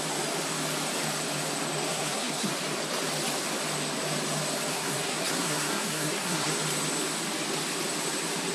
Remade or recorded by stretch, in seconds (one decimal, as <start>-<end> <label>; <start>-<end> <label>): 0.0-1.9 recorded; 1.9-2.5 remade; 2.5-4.7 recorded; 4.7-6.5 remade; 6.5-8.5 recorded